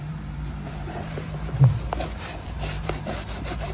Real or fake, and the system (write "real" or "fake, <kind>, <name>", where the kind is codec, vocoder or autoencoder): fake, vocoder, BigVGAN v2